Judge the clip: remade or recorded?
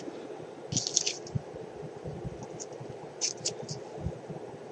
recorded